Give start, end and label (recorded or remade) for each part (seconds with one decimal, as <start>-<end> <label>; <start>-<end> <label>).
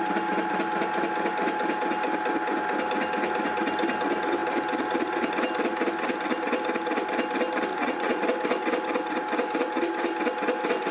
0.0-7.7 recorded; 7.7-8.2 remade; 8.2-10.9 recorded